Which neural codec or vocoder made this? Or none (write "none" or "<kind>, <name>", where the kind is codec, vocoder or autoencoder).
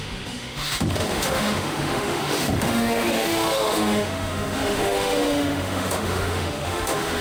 autoencoder, DAC-VAE